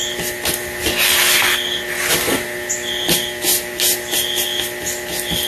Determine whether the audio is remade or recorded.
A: recorded